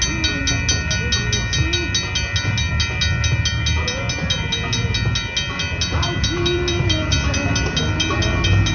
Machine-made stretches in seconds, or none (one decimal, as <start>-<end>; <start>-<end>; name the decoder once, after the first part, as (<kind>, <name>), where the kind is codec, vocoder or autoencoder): none

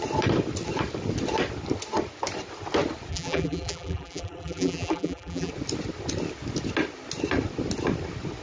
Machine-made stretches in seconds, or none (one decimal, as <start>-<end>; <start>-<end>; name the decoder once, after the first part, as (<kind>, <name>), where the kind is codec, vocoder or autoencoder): 3.1-5.5 (vocoder, BigVGAN v2)

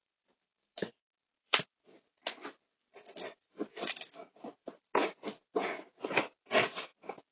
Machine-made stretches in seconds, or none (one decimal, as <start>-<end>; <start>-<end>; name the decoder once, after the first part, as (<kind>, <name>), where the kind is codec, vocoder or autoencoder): 0.0-1.6 (vocoder, BigVGAN v2); 3.2-4.0; 4.9-5.5